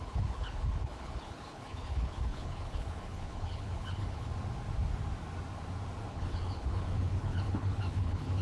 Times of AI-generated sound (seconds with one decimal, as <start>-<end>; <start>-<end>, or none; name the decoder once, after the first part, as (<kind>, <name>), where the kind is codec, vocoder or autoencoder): 0.0-4.3 (codec, HILCodec); 6.1-8.4